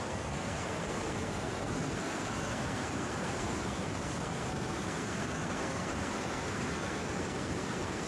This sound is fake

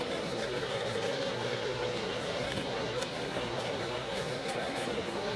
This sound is fake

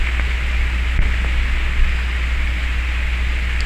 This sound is real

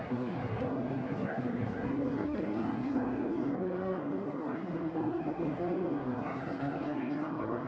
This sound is fake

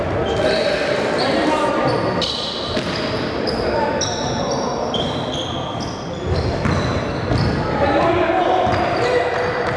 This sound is real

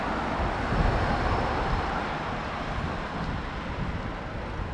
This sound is real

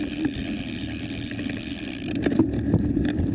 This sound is real